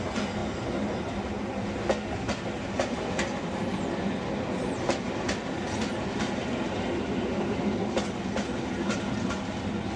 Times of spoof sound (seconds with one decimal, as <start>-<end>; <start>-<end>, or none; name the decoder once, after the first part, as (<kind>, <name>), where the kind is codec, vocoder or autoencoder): none